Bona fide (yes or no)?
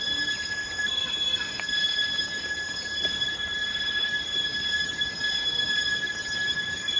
yes